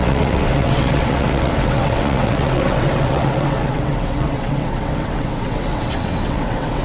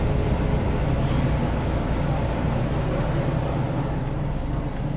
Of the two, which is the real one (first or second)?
second